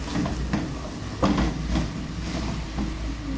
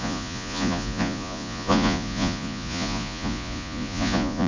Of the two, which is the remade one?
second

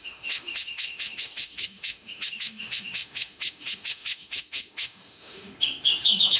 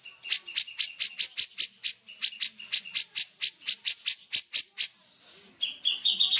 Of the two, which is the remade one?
first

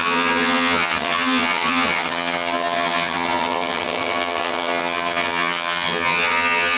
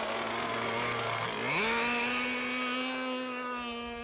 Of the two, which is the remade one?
first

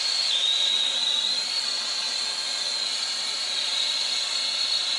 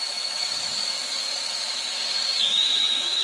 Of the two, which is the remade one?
second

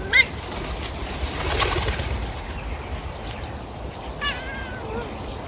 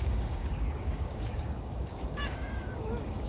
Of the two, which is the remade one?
second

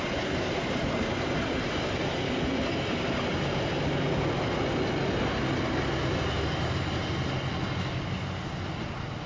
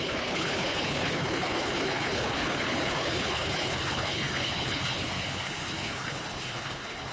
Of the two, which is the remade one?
second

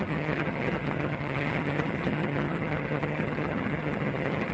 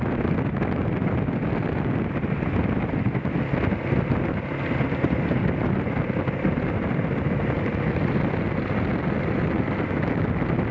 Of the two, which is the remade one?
first